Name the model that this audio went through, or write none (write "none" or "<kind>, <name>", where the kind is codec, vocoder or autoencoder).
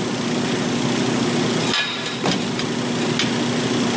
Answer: none